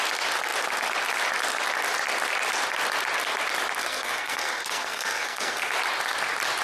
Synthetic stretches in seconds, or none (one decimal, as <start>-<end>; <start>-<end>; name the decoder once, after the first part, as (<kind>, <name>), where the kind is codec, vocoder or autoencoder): 3.8-5.7 (codec, SNAC)